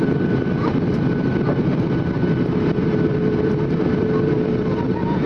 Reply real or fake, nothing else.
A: fake